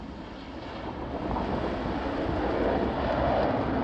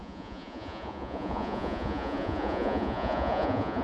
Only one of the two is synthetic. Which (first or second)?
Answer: second